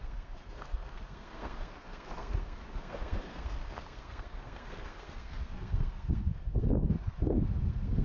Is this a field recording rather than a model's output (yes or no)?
no